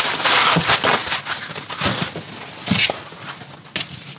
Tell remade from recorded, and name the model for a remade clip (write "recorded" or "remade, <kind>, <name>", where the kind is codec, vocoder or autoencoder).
recorded